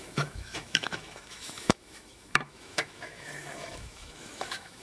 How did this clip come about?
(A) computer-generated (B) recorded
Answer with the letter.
A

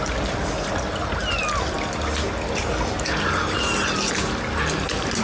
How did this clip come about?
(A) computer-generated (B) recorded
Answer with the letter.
B